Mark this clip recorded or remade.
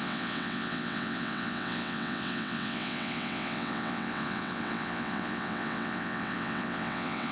remade